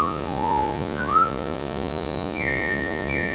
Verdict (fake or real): fake